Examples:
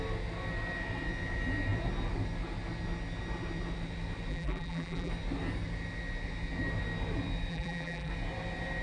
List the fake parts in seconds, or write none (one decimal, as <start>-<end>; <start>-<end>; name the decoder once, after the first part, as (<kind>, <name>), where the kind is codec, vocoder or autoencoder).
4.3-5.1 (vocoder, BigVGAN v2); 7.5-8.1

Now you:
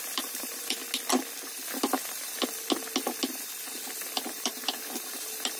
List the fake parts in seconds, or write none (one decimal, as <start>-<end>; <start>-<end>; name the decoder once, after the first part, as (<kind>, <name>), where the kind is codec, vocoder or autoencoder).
0.0-0.8 (vocoder, BigVGAN v2); 4.2-5.6

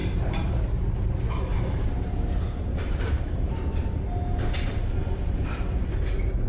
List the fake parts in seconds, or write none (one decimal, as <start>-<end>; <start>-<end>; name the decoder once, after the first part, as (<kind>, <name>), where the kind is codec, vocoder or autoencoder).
0.0-1.1 (vocoder, BigVGAN v2); 1.5-3.5

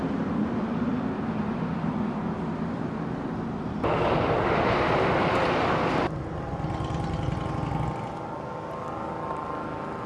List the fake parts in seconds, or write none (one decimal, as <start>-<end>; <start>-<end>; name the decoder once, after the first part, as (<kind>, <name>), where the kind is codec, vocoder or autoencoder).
none